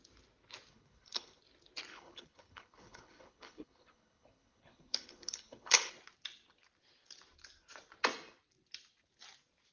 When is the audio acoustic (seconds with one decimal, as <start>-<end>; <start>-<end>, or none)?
0.0-0.7; 1.4-1.9; 5.9-9.7

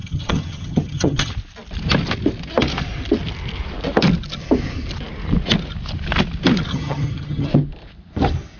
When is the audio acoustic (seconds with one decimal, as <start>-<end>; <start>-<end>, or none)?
1.3-6.7; 7.5-8.6

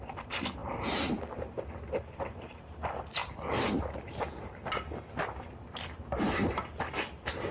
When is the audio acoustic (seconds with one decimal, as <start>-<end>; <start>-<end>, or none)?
none

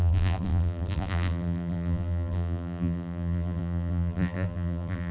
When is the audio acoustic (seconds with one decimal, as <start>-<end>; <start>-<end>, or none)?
none

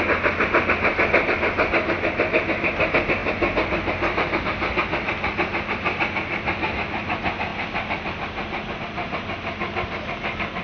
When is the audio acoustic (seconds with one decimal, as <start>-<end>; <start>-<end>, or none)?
0.0-10.6